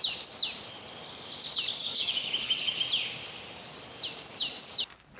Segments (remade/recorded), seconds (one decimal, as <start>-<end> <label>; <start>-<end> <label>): 0.0-1.8 recorded; 1.8-2.8 remade; 2.8-5.2 recorded

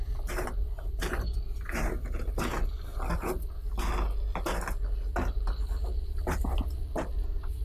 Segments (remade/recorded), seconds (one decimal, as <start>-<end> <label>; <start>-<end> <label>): 0.0-2.9 remade; 2.9-6.4 recorded; 6.4-7.6 remade